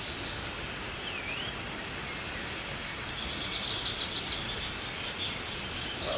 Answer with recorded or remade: recorded